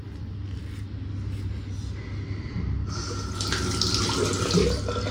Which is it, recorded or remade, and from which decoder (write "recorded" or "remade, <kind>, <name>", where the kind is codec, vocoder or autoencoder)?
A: recorded